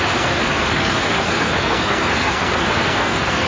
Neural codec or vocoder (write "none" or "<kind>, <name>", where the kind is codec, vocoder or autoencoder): codec, SNAC